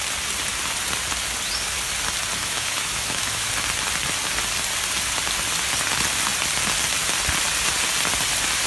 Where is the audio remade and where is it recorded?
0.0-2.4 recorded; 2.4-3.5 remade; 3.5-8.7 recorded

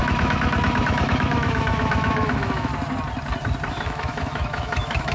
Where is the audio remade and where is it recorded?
0.0-2.7 remade; 2.7-3.7 recorded; 3.7-5.1 remade

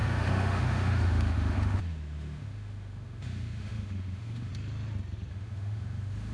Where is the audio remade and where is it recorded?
0.0-4.5 remade; 4.5-5.3 recorded; 5.3-6.3 remade

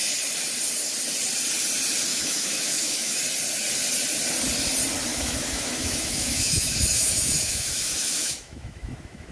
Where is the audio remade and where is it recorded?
0.0-2.1 recorded; 2.1-3.2 remade; 3.2-5.1 recorded; 5.1-9.3 remade